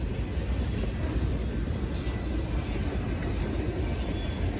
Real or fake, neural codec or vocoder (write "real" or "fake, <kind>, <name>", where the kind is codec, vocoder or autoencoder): real